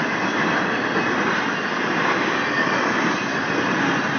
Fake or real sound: real